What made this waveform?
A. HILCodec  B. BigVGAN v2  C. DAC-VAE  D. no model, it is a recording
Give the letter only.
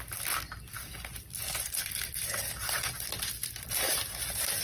B